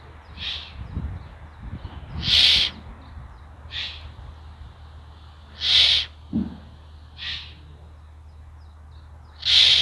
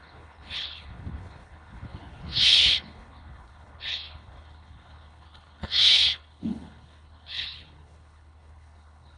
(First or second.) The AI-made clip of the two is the second